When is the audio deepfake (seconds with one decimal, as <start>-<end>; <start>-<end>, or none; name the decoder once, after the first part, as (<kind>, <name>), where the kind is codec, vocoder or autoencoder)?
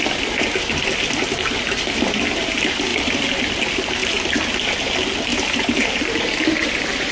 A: 2.9-3.4 (vocoder, BigVGAN v2); 4.0-4.5; 5.3-7.1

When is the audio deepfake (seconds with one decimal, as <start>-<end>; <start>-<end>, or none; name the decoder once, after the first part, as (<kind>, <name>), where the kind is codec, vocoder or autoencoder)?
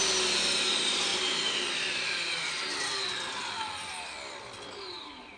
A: 1.1-4.3 (vocoder, BigVGAN v2)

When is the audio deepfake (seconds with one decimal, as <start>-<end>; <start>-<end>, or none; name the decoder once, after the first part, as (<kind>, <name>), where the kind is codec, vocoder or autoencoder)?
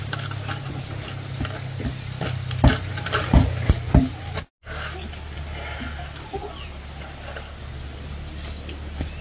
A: 6.4-7.0 (vocoder, BigVGAN v2)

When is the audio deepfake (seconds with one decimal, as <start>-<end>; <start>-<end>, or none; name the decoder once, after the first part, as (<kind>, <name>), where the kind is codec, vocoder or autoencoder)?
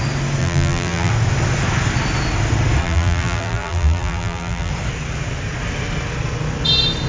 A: 0.4-1.1 (vocoder, BigVGAN v2); 2.8-4.7